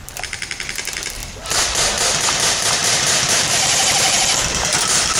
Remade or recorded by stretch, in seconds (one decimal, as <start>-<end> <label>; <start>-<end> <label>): 0.0-2.8 recorded; 2.8-4.2 remade; 4.2-5.2 recorded